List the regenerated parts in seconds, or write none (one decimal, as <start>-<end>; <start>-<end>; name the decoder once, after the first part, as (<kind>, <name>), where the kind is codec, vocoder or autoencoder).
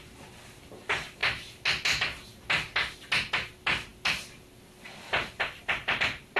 none